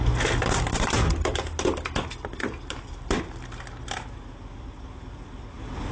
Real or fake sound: real